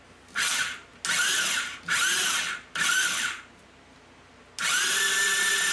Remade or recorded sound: recorded